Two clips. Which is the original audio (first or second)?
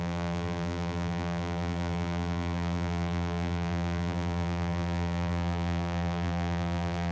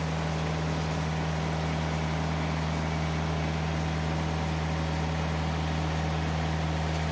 second